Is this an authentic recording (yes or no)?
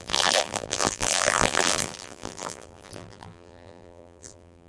no